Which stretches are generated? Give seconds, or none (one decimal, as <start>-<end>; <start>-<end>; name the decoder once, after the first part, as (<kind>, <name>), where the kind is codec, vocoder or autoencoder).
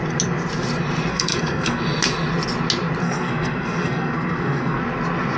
1.1-1.8 (codec, SNAC); 3.0-4.8